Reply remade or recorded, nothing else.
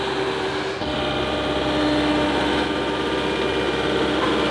recorded